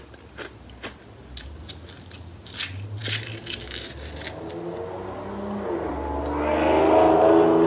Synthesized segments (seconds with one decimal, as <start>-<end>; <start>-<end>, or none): none

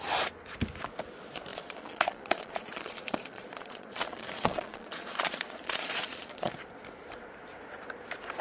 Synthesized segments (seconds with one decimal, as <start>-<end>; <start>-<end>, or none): 1.5-6.5

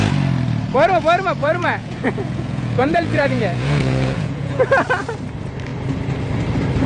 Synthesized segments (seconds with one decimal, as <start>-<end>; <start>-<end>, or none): 1.4-4.6

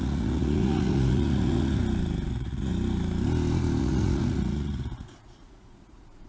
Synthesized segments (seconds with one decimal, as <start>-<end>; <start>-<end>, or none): 0.0-1.8; 2.3-2.7; 3.8-6.3

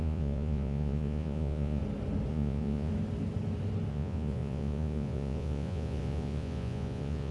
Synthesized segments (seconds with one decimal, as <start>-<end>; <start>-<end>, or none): 0.0-1.8; 2.3-2.9; 3.9-7.3